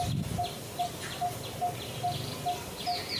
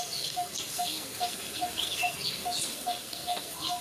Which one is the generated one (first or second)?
second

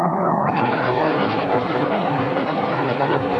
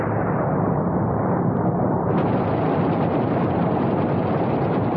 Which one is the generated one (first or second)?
first